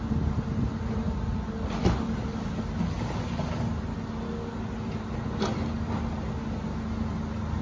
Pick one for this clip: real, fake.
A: real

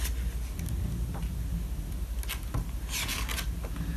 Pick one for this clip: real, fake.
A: real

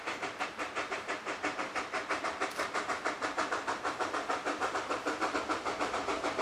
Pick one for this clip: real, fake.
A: fake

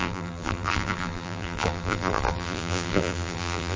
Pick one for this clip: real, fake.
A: fake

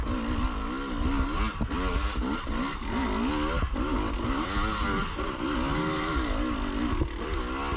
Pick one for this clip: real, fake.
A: real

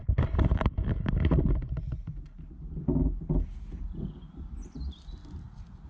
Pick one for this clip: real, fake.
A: real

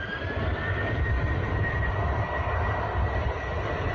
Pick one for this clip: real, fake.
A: fake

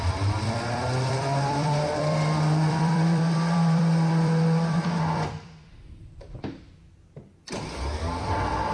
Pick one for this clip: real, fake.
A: fake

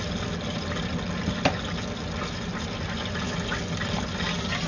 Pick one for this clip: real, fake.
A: real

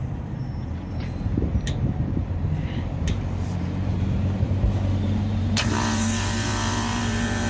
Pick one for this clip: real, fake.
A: fake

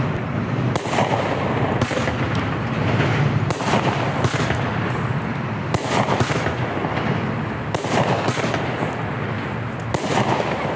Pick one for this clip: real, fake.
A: real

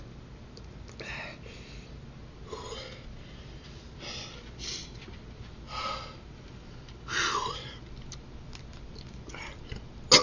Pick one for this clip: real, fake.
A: real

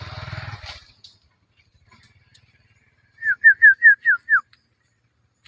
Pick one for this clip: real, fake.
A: real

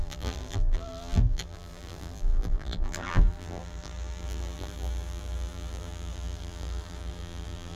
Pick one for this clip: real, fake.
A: fake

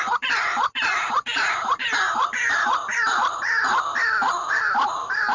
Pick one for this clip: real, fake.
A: fake